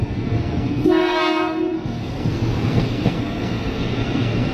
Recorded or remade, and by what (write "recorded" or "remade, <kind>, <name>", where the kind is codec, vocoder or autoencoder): remade, codec, SNAC